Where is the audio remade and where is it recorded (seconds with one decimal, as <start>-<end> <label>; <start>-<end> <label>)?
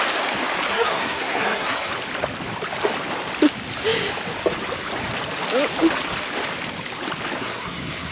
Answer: 0.0-0.7 recorded; 0.7-1.9 remade; 1.9-7.4 recorded; 7.4-8.1 remade